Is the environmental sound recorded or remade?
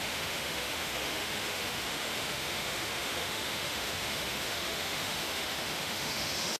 remade